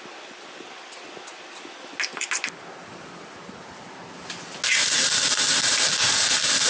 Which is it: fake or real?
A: real